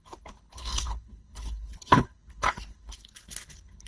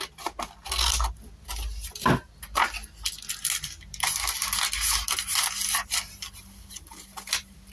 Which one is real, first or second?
second